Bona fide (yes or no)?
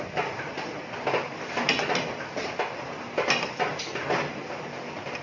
no